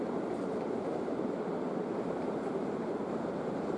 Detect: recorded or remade remade